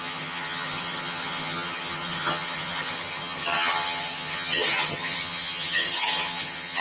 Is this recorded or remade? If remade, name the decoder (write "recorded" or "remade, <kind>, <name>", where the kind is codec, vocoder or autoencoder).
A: remade, vocoder, HiFi-GAN